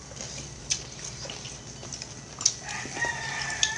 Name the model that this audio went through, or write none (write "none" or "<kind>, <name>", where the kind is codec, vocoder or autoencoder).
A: none